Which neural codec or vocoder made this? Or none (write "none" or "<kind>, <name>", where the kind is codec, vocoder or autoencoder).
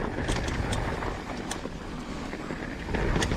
none